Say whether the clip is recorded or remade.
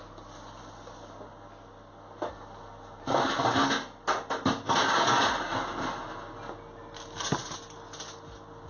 recorded